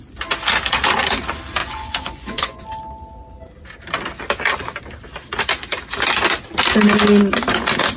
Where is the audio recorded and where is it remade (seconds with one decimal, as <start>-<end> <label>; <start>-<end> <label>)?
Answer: 0.0-1.6 recorded; 1.6-2.6 remade; 2.6-8.0 recorded